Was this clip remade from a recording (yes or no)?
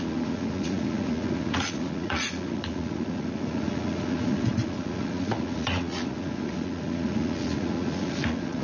yes